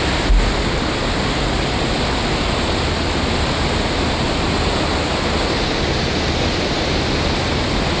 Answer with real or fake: real